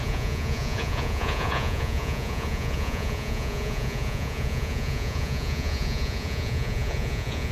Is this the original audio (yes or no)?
no